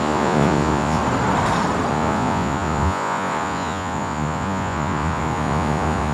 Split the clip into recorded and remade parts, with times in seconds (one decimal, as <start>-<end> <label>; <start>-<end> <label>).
0.0-1.0 remade; 1.0-1.9 recorded; 1.9-6.1 remade